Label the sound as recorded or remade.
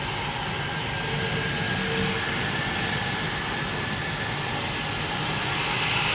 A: recorded